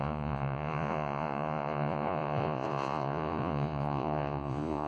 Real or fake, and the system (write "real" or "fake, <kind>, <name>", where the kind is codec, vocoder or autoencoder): fake, vocoder, Vocos